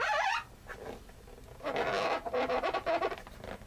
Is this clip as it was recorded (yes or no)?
yes